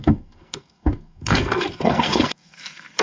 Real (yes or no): no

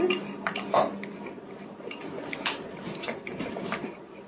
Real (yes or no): yes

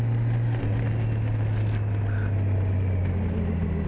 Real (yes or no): yes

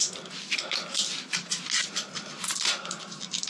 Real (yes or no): yes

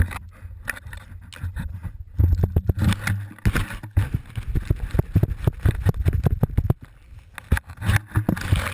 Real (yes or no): yes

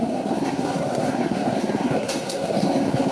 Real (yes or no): no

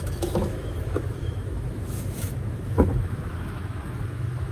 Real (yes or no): no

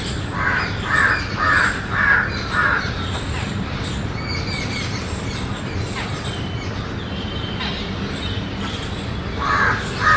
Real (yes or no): yes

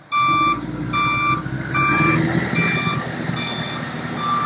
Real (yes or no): yes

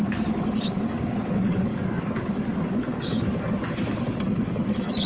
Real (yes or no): no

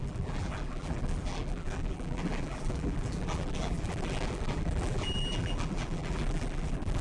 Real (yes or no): no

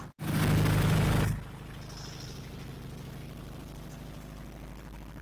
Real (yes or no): yes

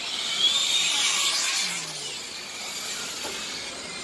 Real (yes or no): yes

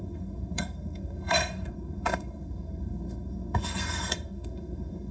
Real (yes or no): no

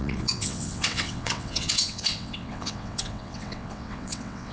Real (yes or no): no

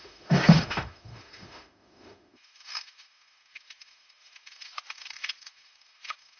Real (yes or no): no